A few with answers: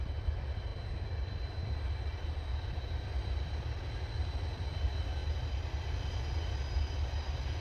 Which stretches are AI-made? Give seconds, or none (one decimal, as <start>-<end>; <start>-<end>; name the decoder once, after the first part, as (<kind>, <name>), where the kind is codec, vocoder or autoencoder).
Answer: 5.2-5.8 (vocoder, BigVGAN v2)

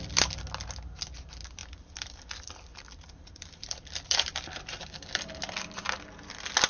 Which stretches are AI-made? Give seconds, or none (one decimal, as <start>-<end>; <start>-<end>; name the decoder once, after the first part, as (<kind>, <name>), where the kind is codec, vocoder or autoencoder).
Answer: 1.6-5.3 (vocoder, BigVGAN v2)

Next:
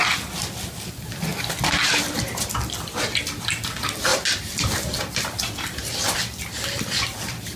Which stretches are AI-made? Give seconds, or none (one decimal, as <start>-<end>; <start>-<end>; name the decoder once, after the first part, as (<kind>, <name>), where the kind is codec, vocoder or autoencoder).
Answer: 0.0-1.3 (vocoder, BigVGAN v2); 2.0-4.1; 4.7-7.6

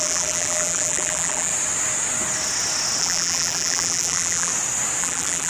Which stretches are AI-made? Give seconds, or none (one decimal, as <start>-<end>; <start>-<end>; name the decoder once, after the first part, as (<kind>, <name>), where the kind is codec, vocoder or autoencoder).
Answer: 0.0-1.5 (vocoder, BigVGAN v2); 3.0-4.5; 5.0-5.5

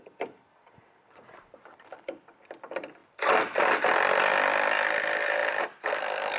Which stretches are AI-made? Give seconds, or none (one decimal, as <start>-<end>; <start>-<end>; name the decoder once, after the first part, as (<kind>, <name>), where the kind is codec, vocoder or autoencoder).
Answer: 3.0-4.3 (vocoder, BigVGAN v2); 5.4-6.4

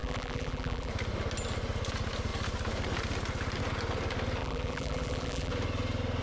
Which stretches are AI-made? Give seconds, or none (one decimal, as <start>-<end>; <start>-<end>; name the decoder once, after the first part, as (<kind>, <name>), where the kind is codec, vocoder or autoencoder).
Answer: 0.0-0.9 (vocoder, BigVGAN v2); 4.4-5.5

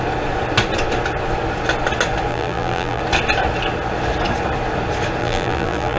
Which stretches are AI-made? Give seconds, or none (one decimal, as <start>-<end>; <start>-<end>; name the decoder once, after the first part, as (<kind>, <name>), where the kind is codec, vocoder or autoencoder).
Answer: 2.3-3.0 (vocoder, BigVGAN v2); 5.2-6.0

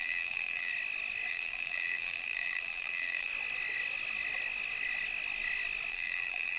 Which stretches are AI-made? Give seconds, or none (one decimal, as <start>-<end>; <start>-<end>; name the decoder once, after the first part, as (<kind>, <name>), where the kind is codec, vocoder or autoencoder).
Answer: 0.0-0.7 (vocoder, BigVGAN v2); 1.3-3.3; 5.9-6.6